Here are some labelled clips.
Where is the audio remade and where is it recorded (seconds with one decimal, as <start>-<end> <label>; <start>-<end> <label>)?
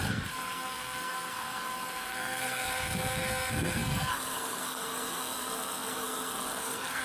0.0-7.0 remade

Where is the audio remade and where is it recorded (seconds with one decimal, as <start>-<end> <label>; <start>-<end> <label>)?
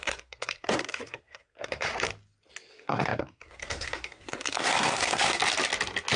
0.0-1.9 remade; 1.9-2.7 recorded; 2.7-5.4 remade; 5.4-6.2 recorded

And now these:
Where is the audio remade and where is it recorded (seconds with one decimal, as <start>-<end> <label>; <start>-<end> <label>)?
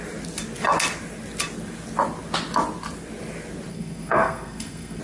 0.0-3.7 recorded; 3.7-5.0 remade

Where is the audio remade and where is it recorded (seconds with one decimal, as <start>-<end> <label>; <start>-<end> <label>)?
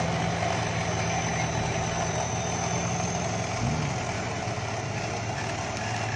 0.0-6.2 recorded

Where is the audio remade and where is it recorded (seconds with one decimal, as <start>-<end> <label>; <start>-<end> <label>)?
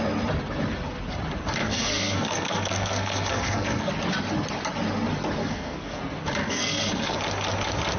0.0-1.6 recorded; 1.6-3.9 remade; 3.9-5.4 recorded; 5.4-6.0 remade; 6.0-6.4 recorded; 6.4-7.2 remade; 7.2-8.0 recorded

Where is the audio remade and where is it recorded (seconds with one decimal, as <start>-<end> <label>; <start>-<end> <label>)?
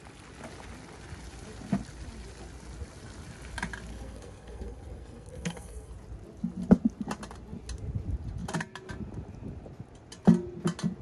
0.0-3.9 recorded; 3.9-5.9 remade; 5.9-11.0 recorded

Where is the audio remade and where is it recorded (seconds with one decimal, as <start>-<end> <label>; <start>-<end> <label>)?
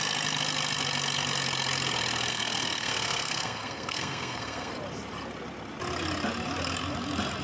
0.0-2.3 recorded; 2.3-4.7 remade; 4.7-7.4 recorded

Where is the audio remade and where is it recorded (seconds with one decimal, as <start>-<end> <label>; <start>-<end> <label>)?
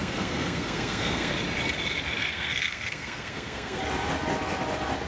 0.0-1.3 remade; 1.3-2.2 recorded; 2.2-3.8 remade; 3.8-5.1 recorded